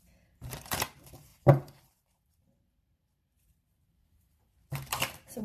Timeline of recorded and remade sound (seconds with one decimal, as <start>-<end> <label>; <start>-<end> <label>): 0.0-5.4 remade